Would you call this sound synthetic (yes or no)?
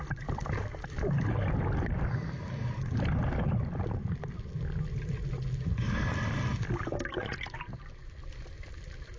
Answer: yes